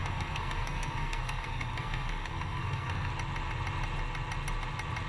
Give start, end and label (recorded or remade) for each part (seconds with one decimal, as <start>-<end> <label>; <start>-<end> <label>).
0.0-3.1 remade; 3.1-5.1 recorded